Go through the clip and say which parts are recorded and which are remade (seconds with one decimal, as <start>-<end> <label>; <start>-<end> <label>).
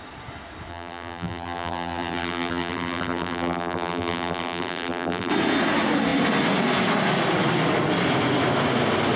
0.0-0.7 recorded; 0.7-5.3 remade; 5.3-9.2 recorded